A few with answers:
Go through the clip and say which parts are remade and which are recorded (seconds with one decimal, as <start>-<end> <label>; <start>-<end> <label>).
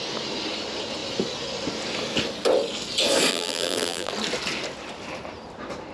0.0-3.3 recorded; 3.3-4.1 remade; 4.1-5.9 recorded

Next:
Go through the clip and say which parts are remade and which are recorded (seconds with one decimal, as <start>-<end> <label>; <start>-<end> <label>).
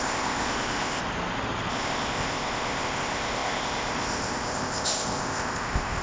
0.0-1.0 remade; 1.0-1.7 recorded; 1.7-6.0 remade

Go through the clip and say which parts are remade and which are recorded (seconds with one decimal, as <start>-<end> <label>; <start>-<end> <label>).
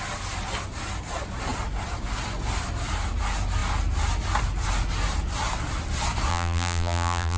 0.0-6.3 recorded; 6.3-7.4 remade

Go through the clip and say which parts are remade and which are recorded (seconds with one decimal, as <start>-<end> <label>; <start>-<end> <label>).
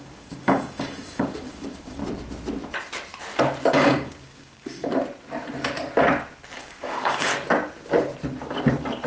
0.0-2.0 remade; 2.0-3.7 recorded; 3.7-4.9 remade; 4.9-6.6 recorded; 6.6-7.3 remade; 7.3-9.1 recorded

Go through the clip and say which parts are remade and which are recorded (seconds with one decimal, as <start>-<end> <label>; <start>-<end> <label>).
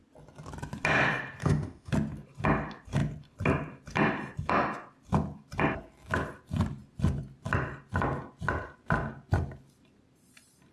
0.0-1.4 recorded; 1.4-1.9 remade; 1.9-10.7 recorded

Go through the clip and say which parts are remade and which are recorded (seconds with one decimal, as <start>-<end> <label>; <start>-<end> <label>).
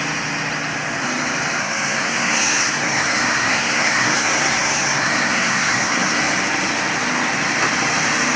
0.0-1.6 recorded; 1.6-6.2 remade; 6.2-8.4 recorded